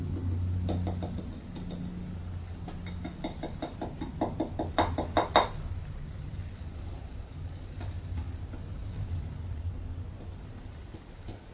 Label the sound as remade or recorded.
recorded